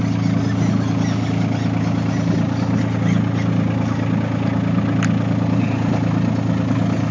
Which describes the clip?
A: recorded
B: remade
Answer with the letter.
A